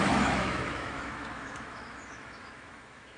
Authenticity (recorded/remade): remade